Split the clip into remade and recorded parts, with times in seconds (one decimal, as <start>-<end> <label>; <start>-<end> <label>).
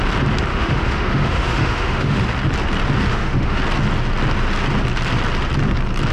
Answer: 0.0-0.5 recorded; 0.5-2.2 remade; 2.2-3.1 recorded; 3.1-3.6 remade; 3.6-6.1 recorded